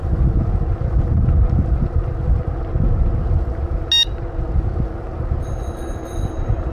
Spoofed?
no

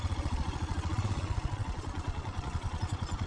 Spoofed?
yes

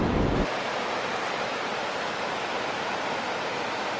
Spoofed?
no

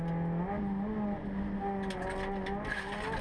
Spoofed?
no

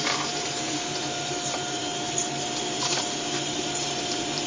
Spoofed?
yes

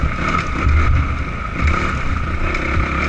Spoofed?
no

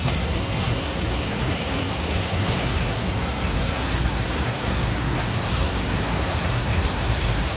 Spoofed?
yes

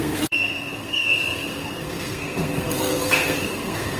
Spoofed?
yes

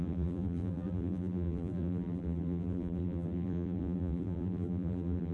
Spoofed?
yes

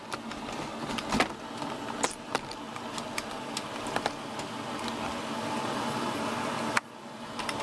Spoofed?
no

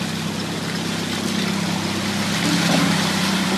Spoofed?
no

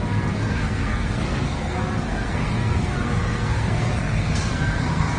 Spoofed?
yes